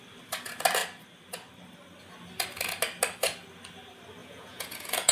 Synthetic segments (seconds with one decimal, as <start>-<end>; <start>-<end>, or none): 4.2-5.1